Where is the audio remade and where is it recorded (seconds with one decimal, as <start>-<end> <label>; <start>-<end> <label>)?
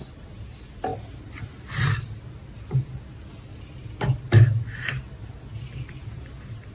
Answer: 0.0-6.7 recorded